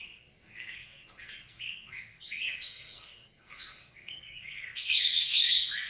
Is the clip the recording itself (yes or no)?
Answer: no